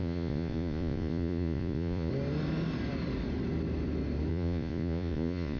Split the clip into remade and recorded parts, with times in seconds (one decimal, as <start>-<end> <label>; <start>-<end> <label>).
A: 0.0-2.1 remade; 2.1-4.3 recorded; 4.3-5.6 remade